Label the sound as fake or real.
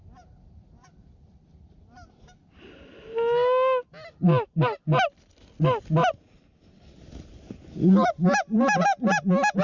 real